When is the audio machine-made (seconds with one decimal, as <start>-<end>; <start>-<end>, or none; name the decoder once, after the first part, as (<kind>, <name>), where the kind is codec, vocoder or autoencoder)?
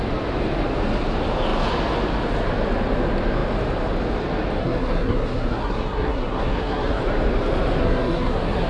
4.6-7.0 (codec, SNAC); 7.8-8.7